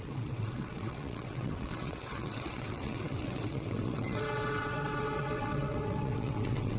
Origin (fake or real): fake